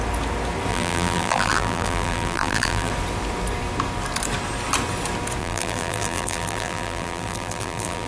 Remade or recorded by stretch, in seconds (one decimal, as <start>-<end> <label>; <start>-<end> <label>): 0.0-0.7 recorded; 0.7-2.9 remade; 2.9-5.4 recorded; 5.4-8.1 remade